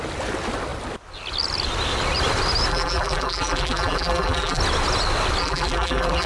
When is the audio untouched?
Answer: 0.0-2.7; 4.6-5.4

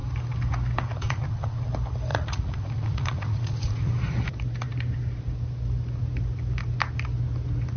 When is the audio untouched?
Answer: 0.0-0.9; 1.7-2.1; 3.9-7.8

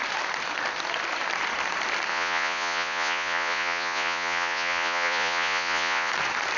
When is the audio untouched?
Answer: 0.0-2.1; 6.1-6.6

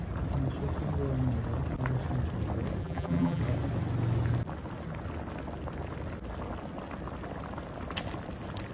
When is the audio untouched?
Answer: 0.0-2.8; 3.4-8.7

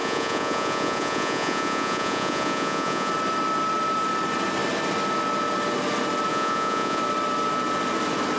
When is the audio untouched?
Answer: 3.1-6.3; 7.0-8.4

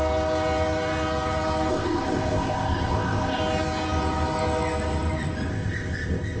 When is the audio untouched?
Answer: 0.0-1.7; 3.4-5.5